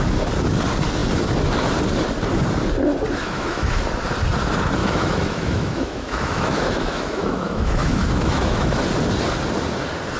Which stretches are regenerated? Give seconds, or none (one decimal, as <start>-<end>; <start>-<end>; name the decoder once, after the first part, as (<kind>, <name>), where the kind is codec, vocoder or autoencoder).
3.2-3.8 (autoencoder, DAC-VAE); 4.8-8.8